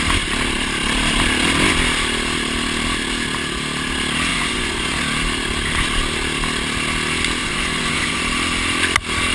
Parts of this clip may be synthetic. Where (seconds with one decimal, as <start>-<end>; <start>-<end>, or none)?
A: 4.3-5.0; 7.4-8.2